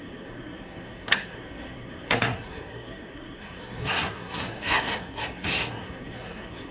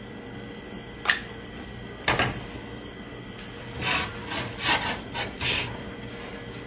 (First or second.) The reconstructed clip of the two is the first